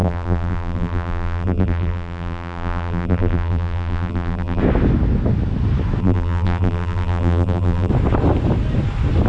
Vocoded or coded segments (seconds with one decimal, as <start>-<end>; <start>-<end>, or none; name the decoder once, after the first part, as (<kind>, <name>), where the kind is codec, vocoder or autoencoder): 0.0-4.6 (vocoder, BigVGAN v2); 6.0-7.9